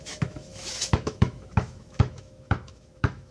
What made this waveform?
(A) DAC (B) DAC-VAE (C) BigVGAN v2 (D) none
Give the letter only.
B